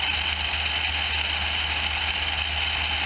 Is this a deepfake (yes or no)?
no